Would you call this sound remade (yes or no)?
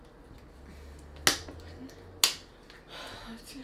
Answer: no